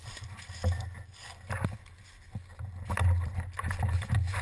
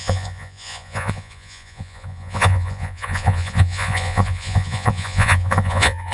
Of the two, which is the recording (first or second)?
first